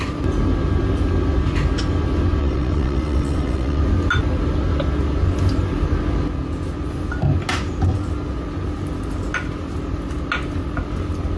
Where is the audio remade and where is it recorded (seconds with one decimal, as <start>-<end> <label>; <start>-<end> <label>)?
0.0-2.4 recorded; 2.4-3.8 remade; 3.8-11.4 recorded